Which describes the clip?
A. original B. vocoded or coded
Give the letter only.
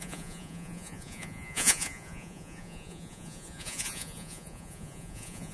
B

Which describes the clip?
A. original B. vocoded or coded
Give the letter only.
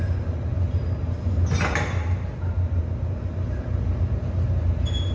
A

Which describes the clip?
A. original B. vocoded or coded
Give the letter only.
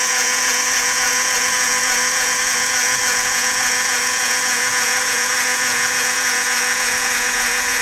B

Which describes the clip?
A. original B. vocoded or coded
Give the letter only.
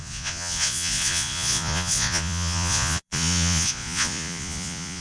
B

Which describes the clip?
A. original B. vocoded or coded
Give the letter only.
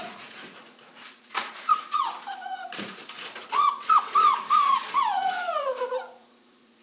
B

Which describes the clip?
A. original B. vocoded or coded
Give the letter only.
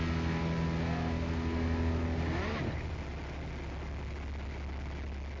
A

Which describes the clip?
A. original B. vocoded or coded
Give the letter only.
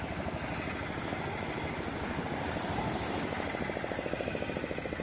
A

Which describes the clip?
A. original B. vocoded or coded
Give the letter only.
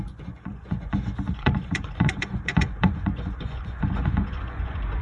B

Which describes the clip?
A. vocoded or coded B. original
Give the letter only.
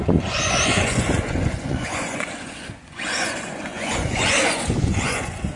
A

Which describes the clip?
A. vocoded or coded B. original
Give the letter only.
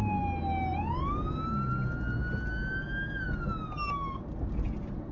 B